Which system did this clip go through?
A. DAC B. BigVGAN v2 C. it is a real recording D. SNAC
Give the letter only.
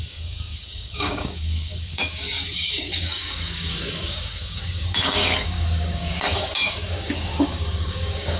A